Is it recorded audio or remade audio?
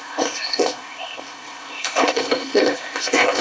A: remade